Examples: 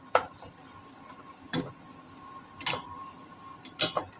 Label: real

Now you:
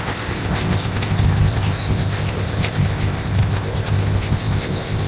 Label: fake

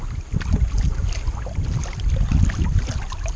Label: real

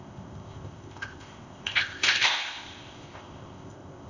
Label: fake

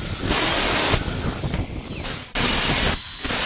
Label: real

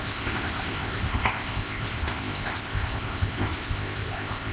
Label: fake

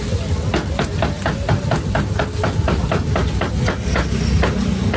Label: real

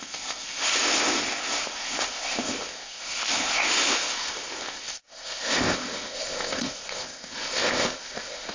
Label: fake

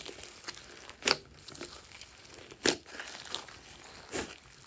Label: real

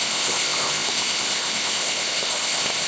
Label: fake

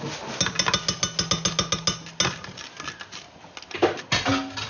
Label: real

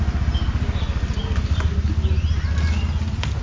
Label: real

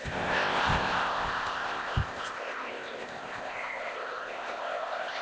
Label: fake